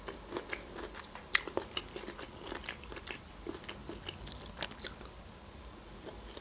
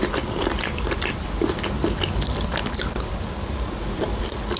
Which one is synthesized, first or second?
second